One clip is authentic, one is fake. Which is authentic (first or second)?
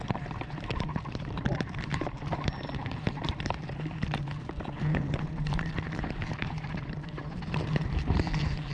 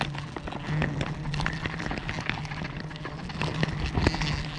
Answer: second